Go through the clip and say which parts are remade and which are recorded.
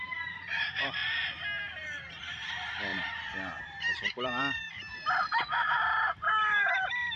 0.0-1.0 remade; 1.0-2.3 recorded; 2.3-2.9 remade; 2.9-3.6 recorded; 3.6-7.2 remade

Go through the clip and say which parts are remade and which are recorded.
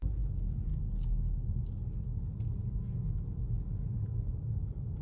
0.0-5.0 recorded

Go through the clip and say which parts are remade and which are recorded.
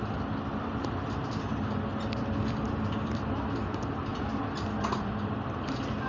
0.0-1.9 recorded; 1.9-3.2 remade; 3.2-4.1 recorded; 4.1-5.1 remade; 5.1-6.1 recorded